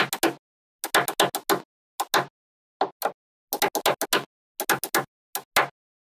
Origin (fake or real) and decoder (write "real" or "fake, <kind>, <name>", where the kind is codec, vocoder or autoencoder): real